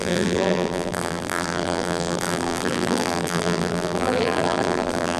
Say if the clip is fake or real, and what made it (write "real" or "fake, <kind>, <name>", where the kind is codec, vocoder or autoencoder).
fake, vocoder, BigVGAN v2